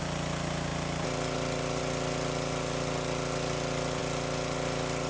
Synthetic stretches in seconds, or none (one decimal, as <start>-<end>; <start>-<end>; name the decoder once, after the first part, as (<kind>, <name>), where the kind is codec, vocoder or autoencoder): none

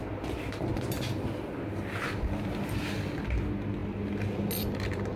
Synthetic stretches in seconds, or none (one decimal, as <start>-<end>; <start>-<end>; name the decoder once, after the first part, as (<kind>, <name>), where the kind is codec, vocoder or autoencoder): none

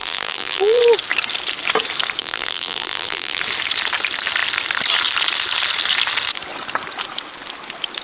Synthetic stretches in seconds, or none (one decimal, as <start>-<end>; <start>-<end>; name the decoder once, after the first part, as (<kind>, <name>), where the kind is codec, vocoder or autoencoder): 0.0-0.8 (vocoder, BigVGAN v2); 2.2-3.4

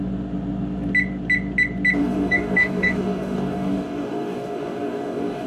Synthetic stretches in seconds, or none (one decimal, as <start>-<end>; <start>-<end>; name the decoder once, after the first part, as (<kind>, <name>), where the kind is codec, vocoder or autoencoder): 2.0-5.5 (codec, DAC)

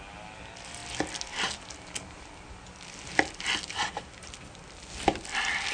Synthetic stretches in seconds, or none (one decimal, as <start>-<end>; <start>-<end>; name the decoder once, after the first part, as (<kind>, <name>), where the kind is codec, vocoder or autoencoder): none

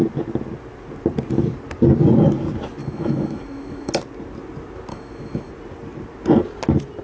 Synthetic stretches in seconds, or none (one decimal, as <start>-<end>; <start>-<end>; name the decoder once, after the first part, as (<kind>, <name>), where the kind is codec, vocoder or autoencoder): 2.8-3.9 (autoencoder, DAC-VAE); 4.9-5.5

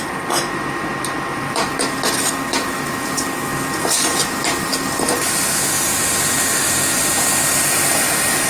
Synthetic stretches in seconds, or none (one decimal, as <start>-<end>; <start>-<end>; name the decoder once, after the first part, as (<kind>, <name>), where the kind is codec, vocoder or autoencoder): 0.0-8.5 (vocoder, BigVGAN v2)

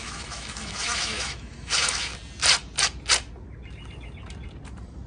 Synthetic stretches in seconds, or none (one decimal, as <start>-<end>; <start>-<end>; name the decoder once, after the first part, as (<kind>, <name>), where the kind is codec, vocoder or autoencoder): 0.0-2.1 (autoencoder, DAC-VAE)